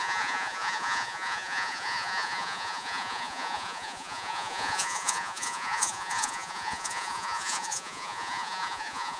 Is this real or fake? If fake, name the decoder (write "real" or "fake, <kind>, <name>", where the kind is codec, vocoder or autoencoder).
fake, vocoder, Vocos